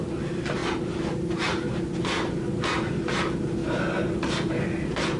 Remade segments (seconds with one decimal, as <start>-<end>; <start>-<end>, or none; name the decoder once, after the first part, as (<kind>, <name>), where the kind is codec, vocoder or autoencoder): none